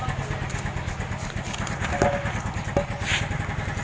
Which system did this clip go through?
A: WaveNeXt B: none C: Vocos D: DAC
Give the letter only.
B